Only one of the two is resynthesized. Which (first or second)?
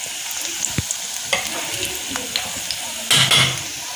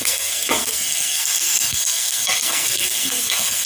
second